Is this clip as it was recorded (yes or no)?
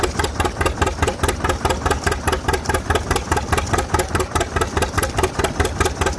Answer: yes